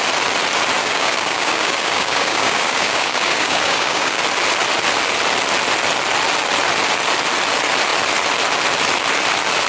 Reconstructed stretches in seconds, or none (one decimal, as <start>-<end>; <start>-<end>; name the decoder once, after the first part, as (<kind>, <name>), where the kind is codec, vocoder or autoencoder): 0.8-4.2 (codec, DAC)